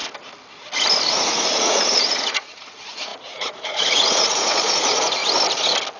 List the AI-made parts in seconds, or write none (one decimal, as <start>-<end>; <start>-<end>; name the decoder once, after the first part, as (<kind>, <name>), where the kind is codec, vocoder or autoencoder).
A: 1.1-5.2 (vocoder, Vocos)